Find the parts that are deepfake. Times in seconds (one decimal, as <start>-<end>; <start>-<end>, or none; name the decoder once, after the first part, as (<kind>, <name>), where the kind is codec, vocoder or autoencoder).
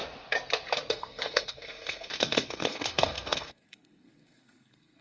0.9-5.0 (codec, SNAC)